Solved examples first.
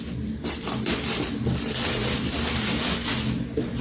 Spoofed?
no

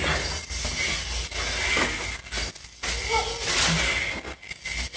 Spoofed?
no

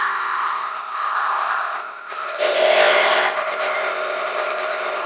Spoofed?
yes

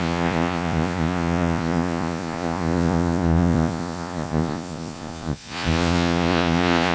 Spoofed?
yes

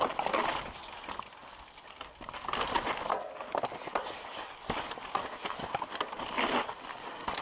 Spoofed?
no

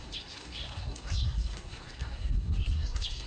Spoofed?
yes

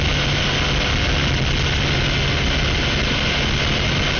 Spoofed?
no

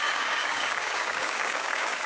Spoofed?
yes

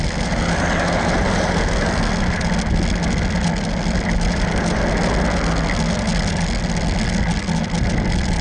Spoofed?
no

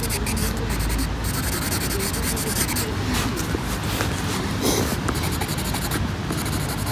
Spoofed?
no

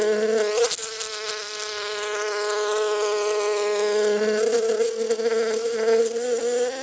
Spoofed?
no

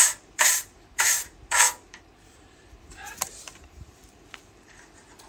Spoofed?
yes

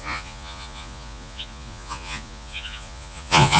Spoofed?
yes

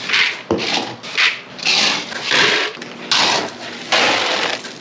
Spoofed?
no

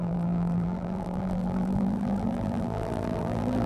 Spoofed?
yes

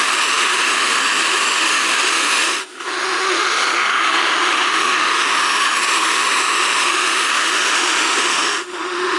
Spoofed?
yes